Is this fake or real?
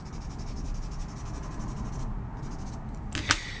real